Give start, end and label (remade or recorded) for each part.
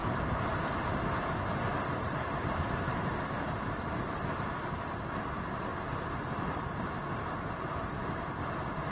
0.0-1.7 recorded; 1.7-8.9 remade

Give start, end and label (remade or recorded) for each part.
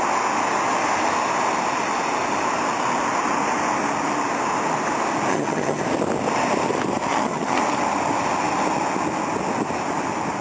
0.0-5.3 recorded; 5.3-5.8 remade; 5.8-7.1 recorded; 7.1-7.6 remade; 7.6-10.4 recorded